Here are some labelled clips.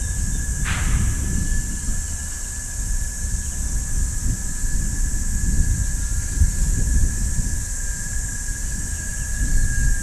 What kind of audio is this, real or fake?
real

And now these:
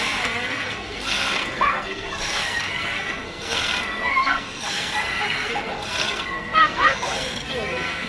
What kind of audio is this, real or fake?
fake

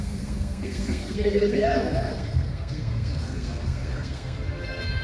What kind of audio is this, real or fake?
fake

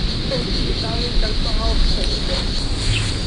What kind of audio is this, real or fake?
real